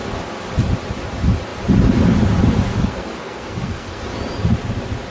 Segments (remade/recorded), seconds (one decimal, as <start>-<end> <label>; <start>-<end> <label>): 0.0-2.7 recorded; 2.7-4.0 remade; 4.0-5.1 recorded